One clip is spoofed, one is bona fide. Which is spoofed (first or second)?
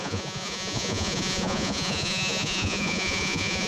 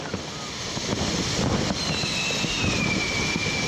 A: first